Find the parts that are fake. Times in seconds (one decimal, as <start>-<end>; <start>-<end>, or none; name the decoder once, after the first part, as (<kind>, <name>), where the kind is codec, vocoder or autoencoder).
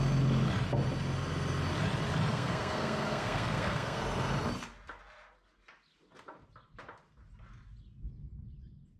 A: 2.3-4.0 (codec, SNAC)